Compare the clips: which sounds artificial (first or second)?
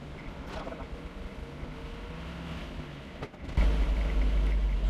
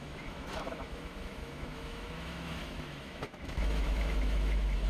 second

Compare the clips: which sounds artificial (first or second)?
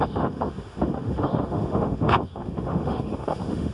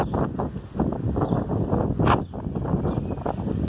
first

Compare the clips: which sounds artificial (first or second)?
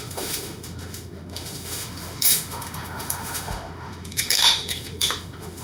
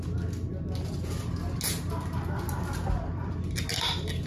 first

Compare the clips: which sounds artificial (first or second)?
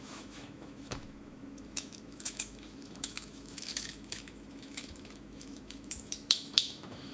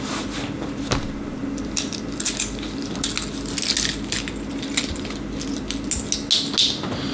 first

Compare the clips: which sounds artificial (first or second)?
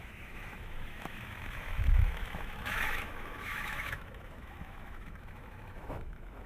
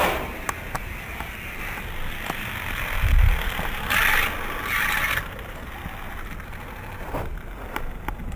first